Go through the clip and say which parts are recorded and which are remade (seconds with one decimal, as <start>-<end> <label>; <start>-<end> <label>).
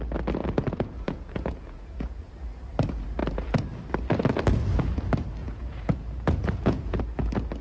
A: 0.0-0.4 recorded; 0.4-2.3 remade; 2.3-5.4 recorded; 5.4-7.0 remade; 7.0-7.6 recorded